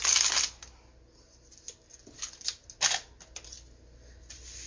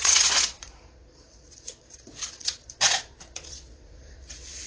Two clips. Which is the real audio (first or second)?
first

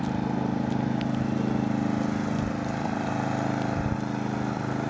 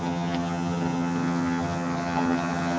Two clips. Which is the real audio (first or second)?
first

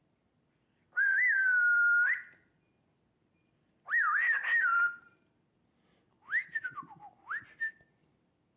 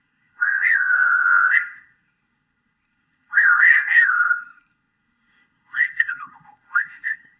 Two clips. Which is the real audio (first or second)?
first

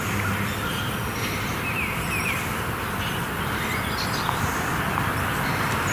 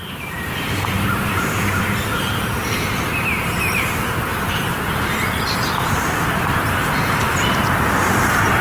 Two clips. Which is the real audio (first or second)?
first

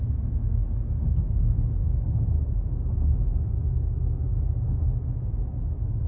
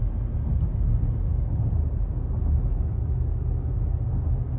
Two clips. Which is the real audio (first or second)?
second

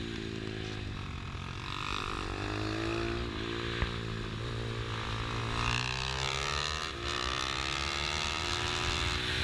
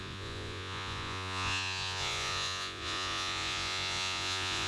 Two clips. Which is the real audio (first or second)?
first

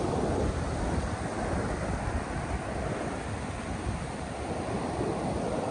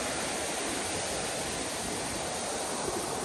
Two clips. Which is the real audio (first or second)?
second